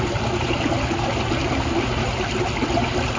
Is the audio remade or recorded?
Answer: recorded